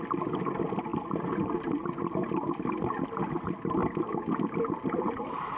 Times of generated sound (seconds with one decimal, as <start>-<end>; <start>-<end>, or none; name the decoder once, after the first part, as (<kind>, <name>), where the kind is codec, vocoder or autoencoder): 3.8-5.6 (vocoder, BigVGAN v2)

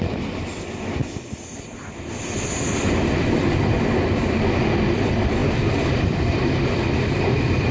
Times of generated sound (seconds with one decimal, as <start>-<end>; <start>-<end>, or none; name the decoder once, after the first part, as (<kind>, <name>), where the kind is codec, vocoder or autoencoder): 5.4-6.8 (vocoder, BigVGAN v2)